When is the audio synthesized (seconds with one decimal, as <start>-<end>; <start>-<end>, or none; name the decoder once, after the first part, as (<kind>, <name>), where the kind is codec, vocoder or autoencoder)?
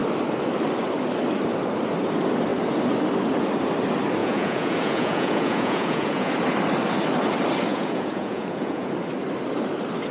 4.2-6.3 (vocoder, Vocos); 7.7-8.9